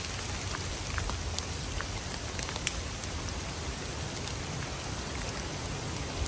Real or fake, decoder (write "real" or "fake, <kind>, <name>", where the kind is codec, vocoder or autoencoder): real